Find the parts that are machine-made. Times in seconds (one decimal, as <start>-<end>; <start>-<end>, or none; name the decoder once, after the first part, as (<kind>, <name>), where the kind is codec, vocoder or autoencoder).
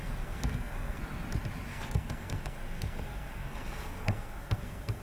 0.0-1.0 (codec, SNAC); 1.7-5.0